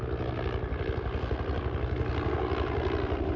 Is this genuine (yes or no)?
yes